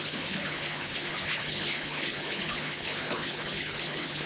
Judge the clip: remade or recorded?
remade